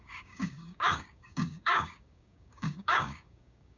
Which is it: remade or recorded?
remade